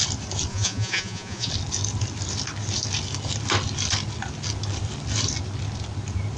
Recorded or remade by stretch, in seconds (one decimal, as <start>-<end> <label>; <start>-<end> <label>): 0.0-0.5 recorded; 0.5-1.5 remade; 1.5-6.4 recorded